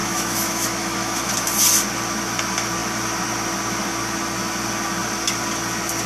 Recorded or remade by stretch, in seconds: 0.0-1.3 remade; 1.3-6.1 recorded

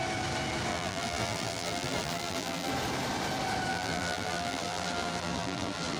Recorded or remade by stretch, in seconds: 0.0-0.7 recorded; 0.7-2.7 remade; 2.7-3.7 recorded; 3.7-6.0 remade